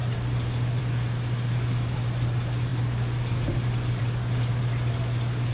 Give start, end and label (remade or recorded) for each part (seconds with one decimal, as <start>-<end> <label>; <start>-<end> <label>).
0.0-5.5 recorded